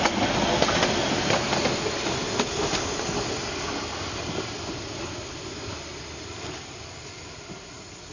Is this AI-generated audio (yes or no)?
no